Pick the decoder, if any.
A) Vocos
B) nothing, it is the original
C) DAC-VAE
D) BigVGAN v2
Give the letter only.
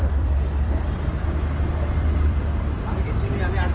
D